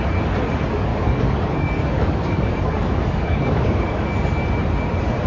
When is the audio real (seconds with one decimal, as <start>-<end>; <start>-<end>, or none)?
0.0-0.9; 4.1-5.3